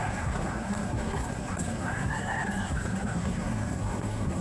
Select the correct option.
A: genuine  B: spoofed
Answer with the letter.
B